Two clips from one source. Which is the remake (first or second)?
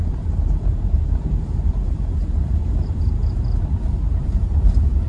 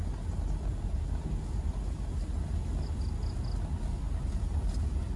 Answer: first